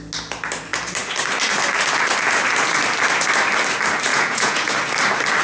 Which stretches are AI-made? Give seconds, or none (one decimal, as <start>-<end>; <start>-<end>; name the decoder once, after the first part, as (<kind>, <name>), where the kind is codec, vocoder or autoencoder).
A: 4.1-4.7 (vocoder, Vocos)